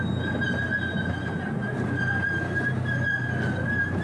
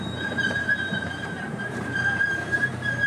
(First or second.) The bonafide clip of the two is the first